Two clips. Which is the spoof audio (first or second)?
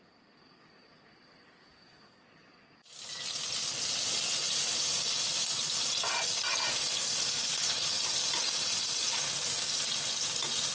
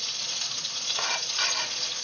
second